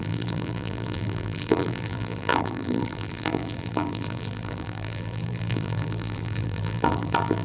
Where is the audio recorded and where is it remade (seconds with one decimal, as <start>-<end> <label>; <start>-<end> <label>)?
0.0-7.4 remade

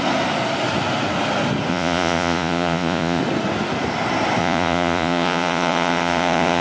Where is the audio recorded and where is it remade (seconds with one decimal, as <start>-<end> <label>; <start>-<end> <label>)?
0.0-1.7 recorded; 1.7-3.2 remade; 3.2-4.4 recorded; 4.4-6.6 remade

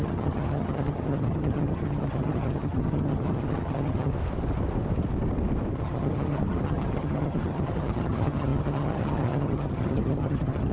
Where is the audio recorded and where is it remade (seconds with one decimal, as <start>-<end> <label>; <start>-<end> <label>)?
0.0-4.1 remade; 4.1-5.7 recorded; 5.7-10.7 remade